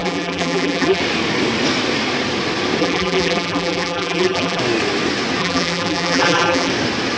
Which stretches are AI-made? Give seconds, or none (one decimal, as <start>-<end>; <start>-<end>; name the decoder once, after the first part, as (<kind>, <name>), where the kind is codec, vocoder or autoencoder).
0.0-1.0 (vocoder, BigVGAN v2); 2.8-4.6; 5.4-6.7